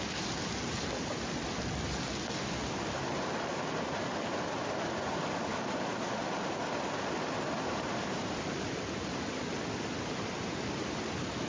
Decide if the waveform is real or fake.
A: real